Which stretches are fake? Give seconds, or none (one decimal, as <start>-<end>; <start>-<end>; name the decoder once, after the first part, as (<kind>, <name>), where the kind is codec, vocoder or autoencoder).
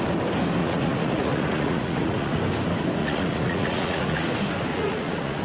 0.6-2.4 (vocoder, Vocos); 3.0-4.3; 4.7-5.4